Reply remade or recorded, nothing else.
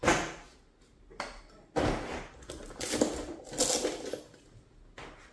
recorded